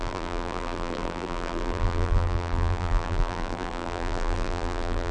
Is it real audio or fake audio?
fake